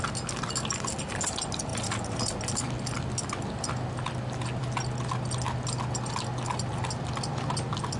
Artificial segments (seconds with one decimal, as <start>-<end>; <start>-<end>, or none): none